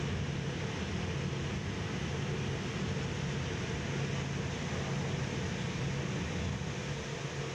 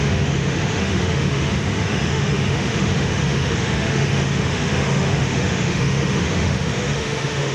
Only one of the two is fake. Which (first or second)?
second